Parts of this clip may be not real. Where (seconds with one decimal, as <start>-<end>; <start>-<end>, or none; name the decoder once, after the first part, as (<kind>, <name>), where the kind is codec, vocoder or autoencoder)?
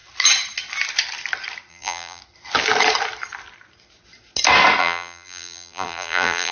1.7-2.2 (vocoder, BigVGAN v2); 4.8-6.5